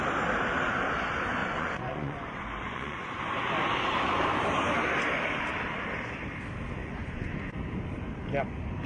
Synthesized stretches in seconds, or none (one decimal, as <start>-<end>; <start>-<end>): 1.4-3.2; 6.8-7.5